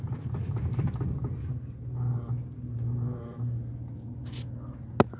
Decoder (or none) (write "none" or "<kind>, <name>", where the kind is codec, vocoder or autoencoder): none